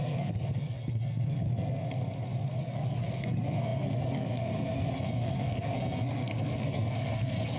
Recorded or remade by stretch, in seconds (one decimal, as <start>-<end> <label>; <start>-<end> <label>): 0.0-1.8 remade; 1.8-2.6 recorded; 2.6-7.6 remade